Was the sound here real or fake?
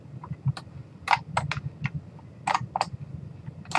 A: real